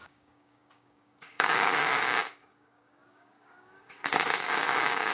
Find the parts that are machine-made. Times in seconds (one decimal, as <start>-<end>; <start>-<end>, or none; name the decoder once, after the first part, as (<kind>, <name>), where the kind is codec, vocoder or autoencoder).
0.0-5.1 (codec, DAC)